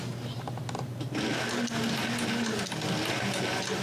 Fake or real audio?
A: real